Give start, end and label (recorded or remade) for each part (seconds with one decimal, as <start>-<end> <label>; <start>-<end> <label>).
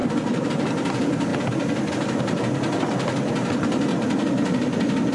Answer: 0.0-0.5 remade; 0.5-1.3 recorded; 1.3-1.9 remade; 1.9-3.9 recorded; 3.9-5.1 remade